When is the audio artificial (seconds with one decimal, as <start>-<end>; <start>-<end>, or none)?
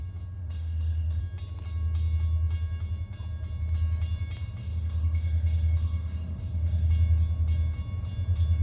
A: 0.4-1.2; 4.6-6.9